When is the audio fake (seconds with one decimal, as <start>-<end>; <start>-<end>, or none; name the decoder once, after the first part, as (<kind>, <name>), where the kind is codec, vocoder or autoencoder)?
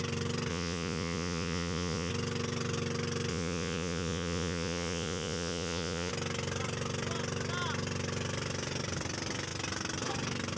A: 0.5-2.1 (vocoder, Vocos); 3.3-6.1